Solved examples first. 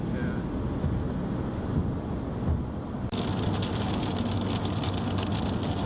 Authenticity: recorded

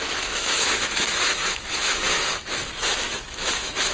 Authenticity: remade